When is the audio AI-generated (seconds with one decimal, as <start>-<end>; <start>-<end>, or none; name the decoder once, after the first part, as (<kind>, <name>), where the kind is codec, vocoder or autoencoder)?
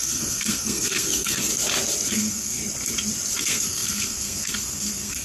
0.0-1.5 (codec, SNAC); 2.1-2.6; 3.4-5.2